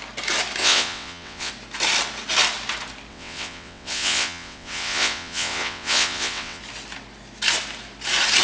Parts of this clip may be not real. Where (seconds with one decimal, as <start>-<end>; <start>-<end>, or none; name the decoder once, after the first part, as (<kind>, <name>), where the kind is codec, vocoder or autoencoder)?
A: 0.6-1.5 (vocoder, WaveNeXt); 3.1-6.6